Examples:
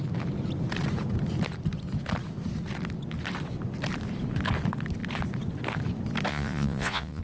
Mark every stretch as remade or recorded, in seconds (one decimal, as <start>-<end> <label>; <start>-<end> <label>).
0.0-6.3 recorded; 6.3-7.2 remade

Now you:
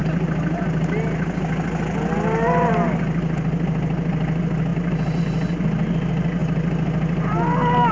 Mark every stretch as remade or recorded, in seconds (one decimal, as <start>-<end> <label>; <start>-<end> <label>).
0.0-7.9 recorded

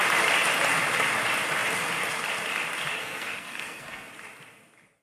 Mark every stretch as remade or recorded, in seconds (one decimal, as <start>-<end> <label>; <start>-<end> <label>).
0.0-3.0 recorded; 3.0-4.1 remade; 4.1-5.0 recorded

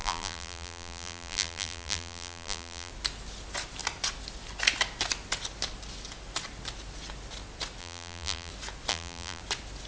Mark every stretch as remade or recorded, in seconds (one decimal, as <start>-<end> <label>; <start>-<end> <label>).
0.0-2.9 remade; 2.9-7.8 recorded; 7.8-8.5 remade; 8.5-8.9 recorded; 8.9-9.4 remade; 9.4-9.9 recorded